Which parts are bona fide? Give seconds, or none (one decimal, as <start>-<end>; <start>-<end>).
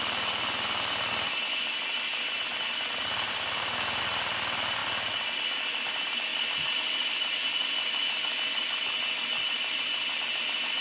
4.8-5.6; 6.3-10.2